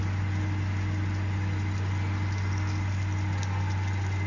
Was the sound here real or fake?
real